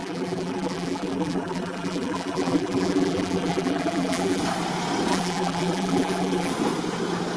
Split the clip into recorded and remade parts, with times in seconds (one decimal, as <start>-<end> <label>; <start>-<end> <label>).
0.0-4.4 remade; 4.4-5.1 recorded; 5.1-6.5 remade; 6.5-7.4 recorded